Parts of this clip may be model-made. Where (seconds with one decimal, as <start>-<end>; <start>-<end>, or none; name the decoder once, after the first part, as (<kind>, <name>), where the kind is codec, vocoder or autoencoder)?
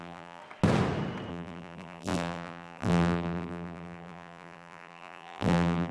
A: 0.0-0.4 (vocoder, BigVGAN v2); 1.3-5.9